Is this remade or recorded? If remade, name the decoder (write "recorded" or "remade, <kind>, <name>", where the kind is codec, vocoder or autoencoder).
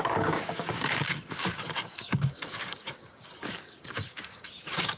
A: remade, codec, DAC